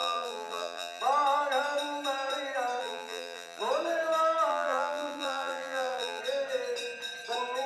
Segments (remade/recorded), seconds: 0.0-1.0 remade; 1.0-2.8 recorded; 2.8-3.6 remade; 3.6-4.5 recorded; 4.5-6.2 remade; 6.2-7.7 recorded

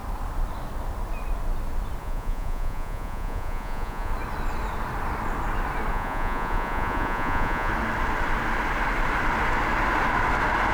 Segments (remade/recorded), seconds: 0.0-2.0 recorded; 2.0-4.1 remade; 4.1-5.9 recorded; 5.9-7.7 remade; 7.7-10.7 recorded

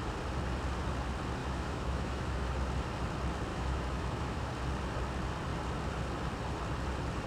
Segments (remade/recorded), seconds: 0.0-1.4 recorded; 1.4-2.5 remade; 2.5-3.5 recorded; 3.5-4.5 remade; 4.5-7.3 recorded

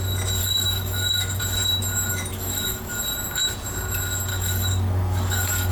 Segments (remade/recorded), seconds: 0.0-0.4 recorded; 0.4-1.4 remade; 1.4-2.3 recorded; 2.3-2.9 remade; 2.9-4.3 recorded; 4.3-5.7 remade

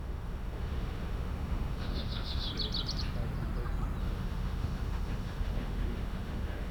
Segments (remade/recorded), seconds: 0.0-2.5 remade; 2.5-4.0 recorded; 4.0-6.7 remade

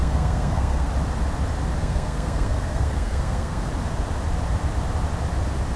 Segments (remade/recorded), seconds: 0.0-0.9 remade; 0.9-1.8 recorded; 1.8-3.7 remade; 3.7-5.8 recorded